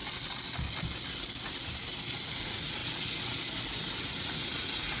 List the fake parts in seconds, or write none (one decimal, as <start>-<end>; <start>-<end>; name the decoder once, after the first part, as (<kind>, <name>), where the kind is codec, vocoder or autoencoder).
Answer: 2.4-2.8 (vocoder, Vocos); 4.2-5.0